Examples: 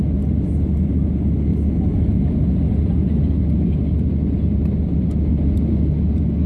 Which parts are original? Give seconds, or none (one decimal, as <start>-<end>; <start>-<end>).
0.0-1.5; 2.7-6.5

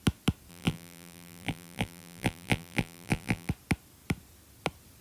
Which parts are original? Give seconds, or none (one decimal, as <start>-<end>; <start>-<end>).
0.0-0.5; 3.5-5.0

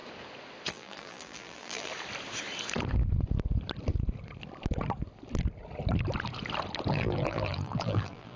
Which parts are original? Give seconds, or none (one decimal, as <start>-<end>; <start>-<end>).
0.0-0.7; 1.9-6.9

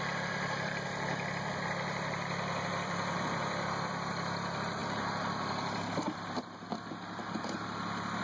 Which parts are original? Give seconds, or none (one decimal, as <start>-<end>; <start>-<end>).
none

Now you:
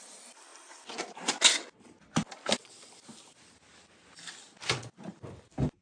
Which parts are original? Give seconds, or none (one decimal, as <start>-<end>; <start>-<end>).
0.0-5.1

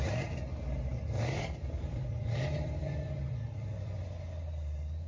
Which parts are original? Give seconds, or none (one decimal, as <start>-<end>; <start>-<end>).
0.0-0.9; 4.0-5.1